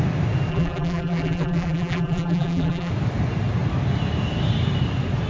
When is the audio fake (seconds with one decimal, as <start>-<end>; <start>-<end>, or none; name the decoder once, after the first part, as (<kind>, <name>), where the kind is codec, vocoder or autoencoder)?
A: 0.5-2.9 (vocoder, BigVGAN v2)